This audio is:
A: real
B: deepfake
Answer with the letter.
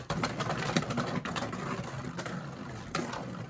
A